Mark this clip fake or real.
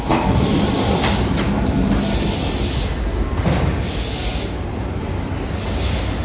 real